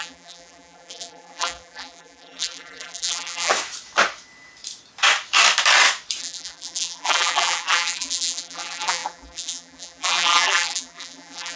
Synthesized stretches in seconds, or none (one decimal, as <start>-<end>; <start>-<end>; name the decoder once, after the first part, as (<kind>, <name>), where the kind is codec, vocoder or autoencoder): 0.0-3.5 (vocoder, BigVGAN v2); 6.2-11.6

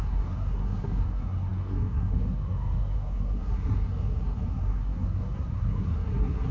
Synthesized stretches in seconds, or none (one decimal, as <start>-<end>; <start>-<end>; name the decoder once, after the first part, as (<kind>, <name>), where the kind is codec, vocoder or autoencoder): 0.0-6.5 (codec, SNAC)

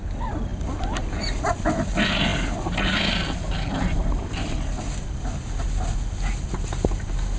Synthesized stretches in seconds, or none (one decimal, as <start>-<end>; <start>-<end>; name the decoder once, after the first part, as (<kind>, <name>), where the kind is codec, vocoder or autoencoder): none